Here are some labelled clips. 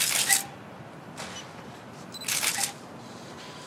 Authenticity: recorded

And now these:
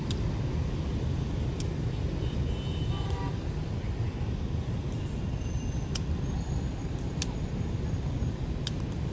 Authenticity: recorded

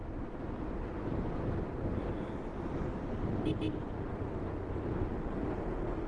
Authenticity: recorded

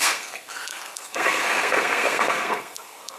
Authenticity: remade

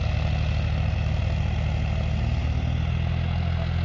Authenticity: recorded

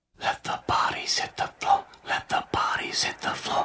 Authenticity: recorded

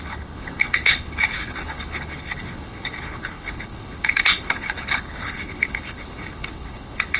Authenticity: remade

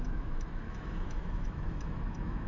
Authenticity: remade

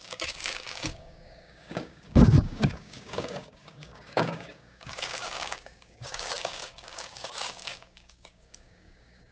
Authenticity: remade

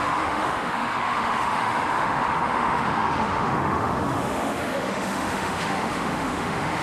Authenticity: remade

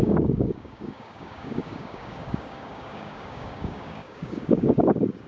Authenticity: remade